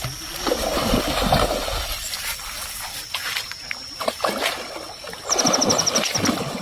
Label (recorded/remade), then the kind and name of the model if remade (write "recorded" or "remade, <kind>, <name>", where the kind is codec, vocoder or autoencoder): recorded